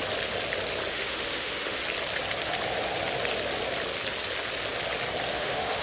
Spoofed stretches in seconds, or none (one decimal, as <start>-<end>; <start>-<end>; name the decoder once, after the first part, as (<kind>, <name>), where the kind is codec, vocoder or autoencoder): 0.9-1.8 (autoencoder, DAC-VAE); 5.3-5.8